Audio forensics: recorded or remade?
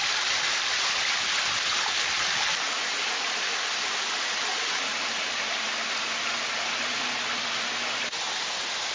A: recorded